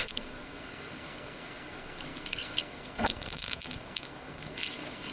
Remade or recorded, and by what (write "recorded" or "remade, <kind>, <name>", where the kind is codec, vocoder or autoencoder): remade, codec, SNAC